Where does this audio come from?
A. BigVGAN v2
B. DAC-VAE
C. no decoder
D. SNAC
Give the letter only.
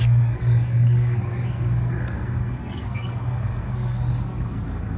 D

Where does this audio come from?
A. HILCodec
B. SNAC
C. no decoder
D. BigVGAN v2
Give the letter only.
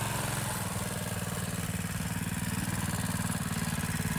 C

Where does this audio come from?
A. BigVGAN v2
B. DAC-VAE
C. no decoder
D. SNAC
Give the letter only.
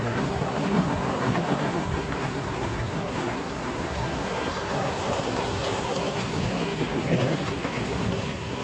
D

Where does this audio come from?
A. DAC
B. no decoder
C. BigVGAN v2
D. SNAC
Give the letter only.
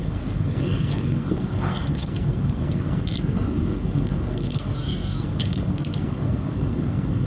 D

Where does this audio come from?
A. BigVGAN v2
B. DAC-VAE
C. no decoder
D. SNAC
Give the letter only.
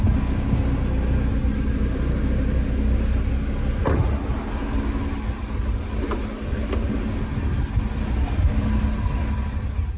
C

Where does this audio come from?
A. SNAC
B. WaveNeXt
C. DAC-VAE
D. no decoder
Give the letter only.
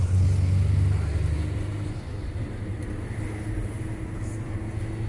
D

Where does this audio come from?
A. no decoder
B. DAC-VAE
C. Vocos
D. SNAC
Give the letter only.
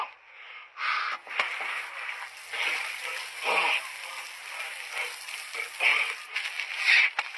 A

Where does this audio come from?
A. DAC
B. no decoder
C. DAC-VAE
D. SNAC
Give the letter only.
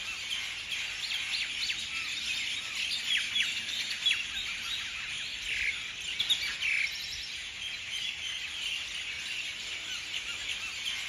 B